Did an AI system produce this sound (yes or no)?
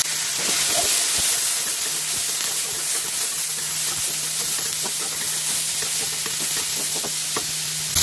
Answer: no